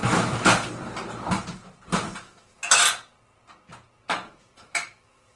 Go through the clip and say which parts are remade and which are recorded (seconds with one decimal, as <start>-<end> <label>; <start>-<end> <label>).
0.0-2.2 recorded; 2.2-2.6 remade; 2.6-4.1 recorded; 4.1-5.4 remade